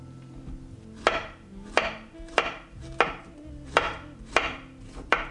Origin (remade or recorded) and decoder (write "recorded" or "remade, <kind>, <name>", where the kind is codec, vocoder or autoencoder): remade, vocoder, BigVGAN v2